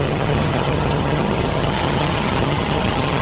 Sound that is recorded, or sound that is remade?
remade